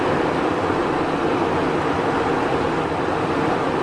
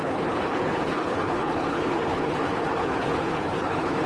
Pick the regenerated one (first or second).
second